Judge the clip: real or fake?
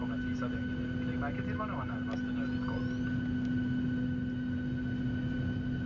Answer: real